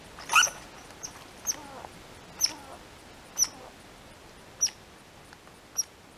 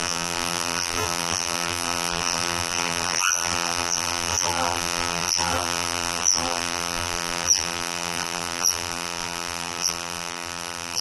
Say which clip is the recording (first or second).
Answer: first